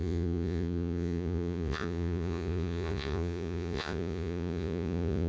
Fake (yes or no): yes